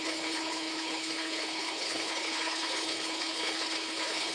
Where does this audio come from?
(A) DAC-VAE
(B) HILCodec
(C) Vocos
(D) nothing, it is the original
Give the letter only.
B